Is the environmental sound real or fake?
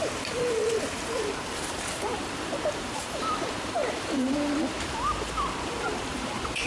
fake